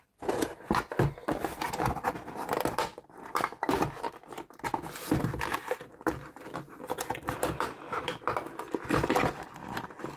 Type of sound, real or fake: real